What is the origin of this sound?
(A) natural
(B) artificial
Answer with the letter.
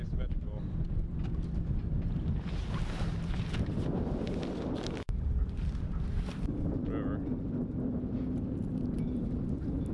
B